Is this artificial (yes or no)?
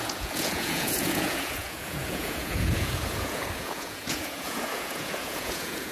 yes